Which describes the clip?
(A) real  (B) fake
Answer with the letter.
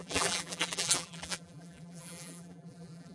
B